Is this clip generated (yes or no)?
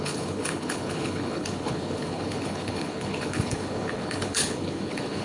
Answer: yes